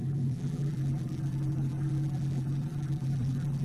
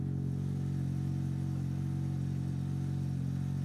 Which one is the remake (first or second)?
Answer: first